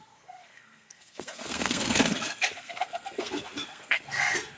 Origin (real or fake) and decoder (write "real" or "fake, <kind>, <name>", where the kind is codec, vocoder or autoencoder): fake, codec, SNAC